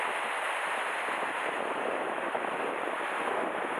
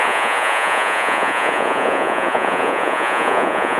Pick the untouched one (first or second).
first